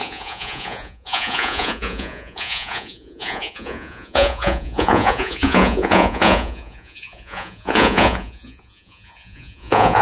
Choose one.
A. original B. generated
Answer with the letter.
B